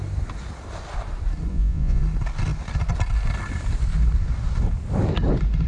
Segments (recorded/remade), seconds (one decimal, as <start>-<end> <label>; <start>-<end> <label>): 0.0-1.5 recorded; 1.5-2.0 remade; 2.0-5.7 recorded